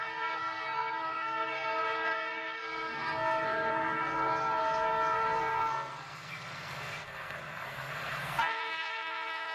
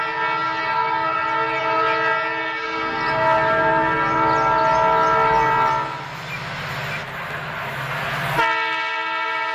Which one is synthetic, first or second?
first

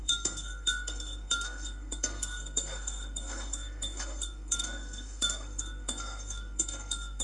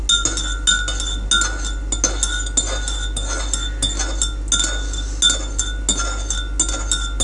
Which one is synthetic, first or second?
first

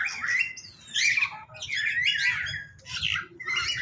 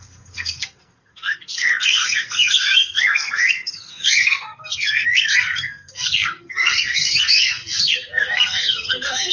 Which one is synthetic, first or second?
second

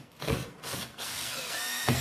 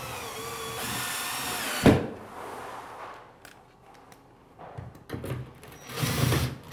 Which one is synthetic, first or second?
first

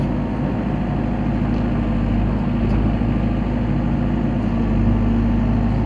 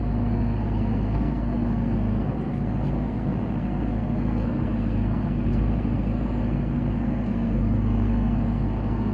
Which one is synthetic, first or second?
second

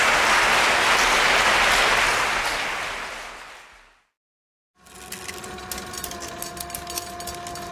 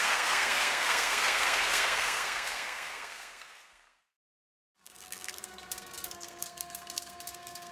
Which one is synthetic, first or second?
second